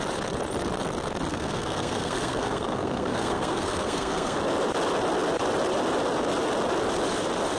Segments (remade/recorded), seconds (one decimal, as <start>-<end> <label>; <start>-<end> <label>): 0.0-1.3 recorded; 1.3-4.4 remade; 4.4-7.6 recorded